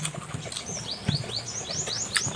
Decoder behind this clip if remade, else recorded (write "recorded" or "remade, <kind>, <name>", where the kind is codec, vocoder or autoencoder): recorded